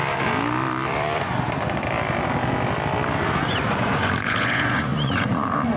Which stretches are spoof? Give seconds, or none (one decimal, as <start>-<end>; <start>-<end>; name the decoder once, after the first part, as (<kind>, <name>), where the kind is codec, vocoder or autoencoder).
3.5-5.8 (vocoder, Vocos)